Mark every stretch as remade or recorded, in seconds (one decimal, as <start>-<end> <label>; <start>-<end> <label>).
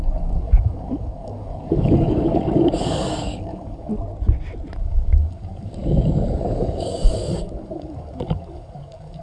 0.0-3.9 remade; 3.9-4.8 recorded; 4.8-9.2 remade